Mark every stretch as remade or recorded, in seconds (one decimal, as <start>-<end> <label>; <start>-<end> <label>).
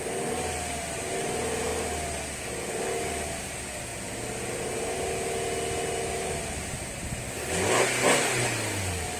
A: 0.0-9.2 recorded